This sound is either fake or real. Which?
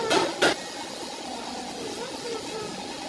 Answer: real